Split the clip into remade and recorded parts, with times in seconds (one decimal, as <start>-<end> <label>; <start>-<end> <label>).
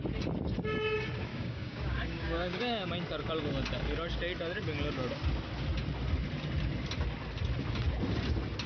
0.0-1.3 recorded; 1.3-2.9 remade; 2.9-8.7 recorded